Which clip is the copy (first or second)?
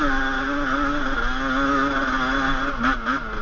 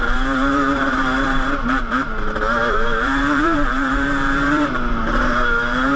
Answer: second